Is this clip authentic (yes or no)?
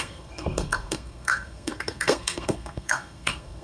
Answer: no